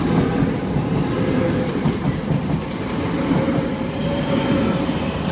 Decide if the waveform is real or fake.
real